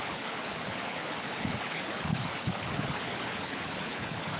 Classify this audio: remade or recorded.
remade